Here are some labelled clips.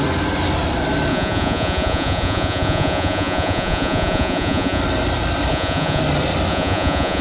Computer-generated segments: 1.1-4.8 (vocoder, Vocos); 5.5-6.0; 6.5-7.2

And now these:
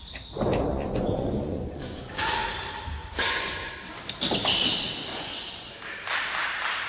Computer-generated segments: 0.7-2.3 (vocoder, Vocos); 3.0-3.7; 5.1-5.7

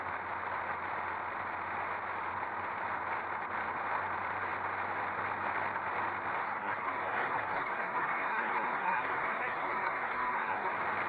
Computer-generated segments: 6.4-10.7 (codec, SNAC)

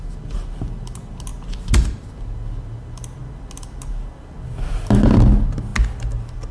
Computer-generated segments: none

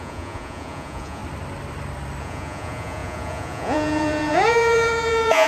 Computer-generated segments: 0.0-1.2 (vocoder, Vocos); 2.2-5.5

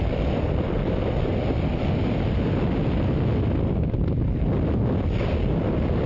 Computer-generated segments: none

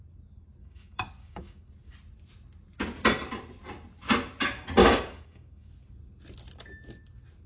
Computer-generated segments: 0.6-1.7 (codec, DAC); 4.8-5.7

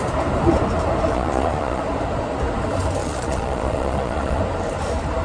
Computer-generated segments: 1.1-1.8 (vocoder, Vocos); 3.0-4.4